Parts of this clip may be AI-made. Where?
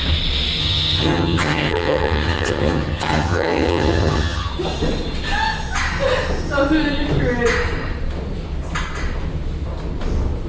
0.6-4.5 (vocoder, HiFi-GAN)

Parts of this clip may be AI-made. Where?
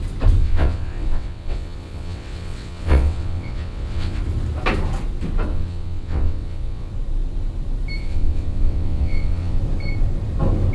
0.4-4.2 (vocoder, WaveNeXt); 5.5-6.9; 8.0-9.6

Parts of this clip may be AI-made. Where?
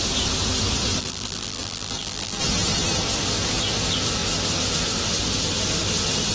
1.0-2.4 (vocoder, BigVGAN v2)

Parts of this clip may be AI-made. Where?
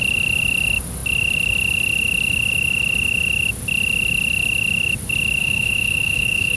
5.4-6.6 (autoencoder, DAC-VAE)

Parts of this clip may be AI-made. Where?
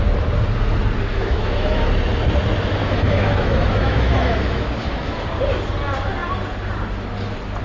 1.1-1.9 (autoencoder, DAC-VAE); 2.8-5.2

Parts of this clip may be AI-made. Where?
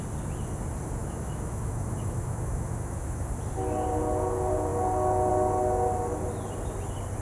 1.0-3.3 (autoencoder, DAC-VAE)